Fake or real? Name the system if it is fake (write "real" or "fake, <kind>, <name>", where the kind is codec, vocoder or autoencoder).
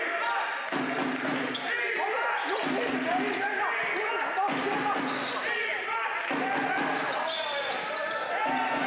real